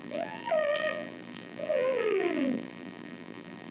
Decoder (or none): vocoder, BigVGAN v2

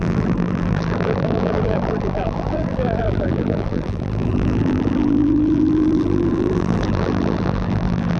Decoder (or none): vocoder, BigVGAN v2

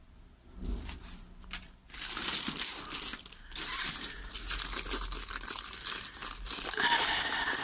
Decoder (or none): none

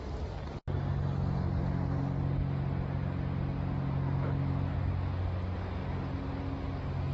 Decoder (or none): none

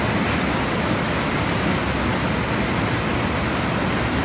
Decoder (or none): none